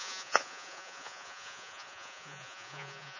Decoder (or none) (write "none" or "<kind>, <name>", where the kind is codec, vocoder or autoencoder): vocoder, Vocos